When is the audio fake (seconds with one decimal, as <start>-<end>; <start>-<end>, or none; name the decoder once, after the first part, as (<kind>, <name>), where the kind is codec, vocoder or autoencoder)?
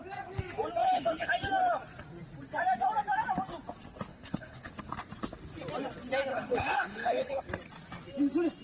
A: 0.8-1.3 (codec, HILCodec); 4.1-4.7; 6.3-7.4